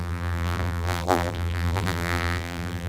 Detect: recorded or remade remade